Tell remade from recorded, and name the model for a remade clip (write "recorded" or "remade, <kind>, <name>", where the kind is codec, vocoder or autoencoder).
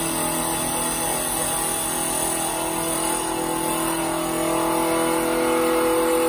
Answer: recorded